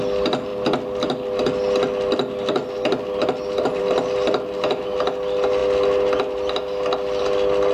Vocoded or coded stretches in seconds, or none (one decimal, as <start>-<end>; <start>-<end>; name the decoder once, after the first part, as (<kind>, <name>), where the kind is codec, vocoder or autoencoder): none